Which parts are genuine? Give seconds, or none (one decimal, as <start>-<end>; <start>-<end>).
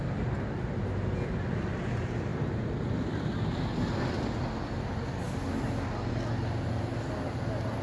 0.0-7.8